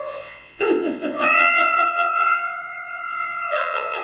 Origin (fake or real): fake